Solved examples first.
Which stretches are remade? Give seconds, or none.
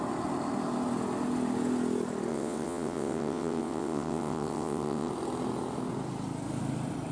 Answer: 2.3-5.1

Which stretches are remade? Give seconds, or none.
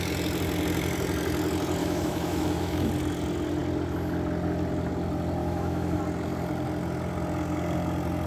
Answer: 1.8-2.9; 5.4-6.0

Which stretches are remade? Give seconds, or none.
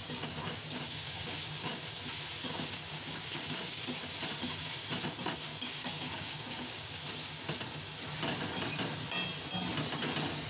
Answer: 0.0-1.9; 2.4-3.8; 5.5-7.0